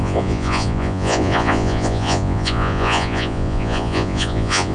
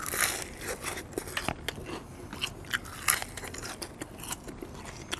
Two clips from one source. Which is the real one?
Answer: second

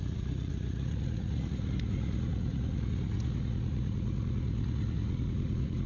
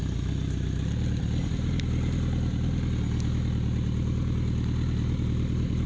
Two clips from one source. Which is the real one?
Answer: second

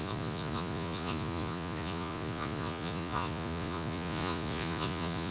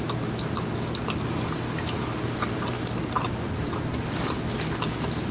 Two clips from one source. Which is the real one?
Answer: second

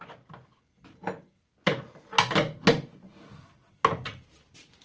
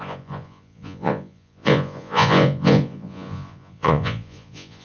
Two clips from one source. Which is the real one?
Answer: first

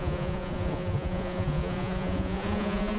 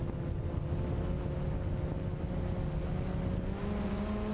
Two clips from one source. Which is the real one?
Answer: second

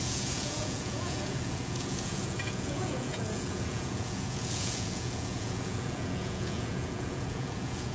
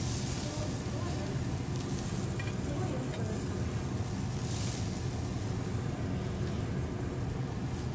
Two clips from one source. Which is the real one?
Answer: second